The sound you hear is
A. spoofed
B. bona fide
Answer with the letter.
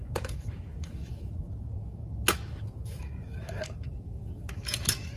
A